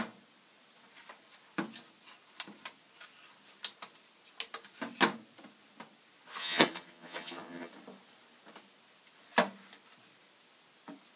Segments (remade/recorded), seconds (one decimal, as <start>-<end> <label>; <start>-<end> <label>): 0.0-6.4 recorded; 6.4-7.7 remade; 7.7-11.2 recorded